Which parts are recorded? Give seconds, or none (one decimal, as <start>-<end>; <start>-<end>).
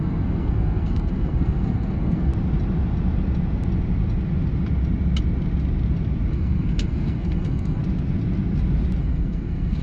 2.3-6.3; 7.8-9.0